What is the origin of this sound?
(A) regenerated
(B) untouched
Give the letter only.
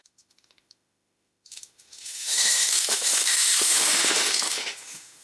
A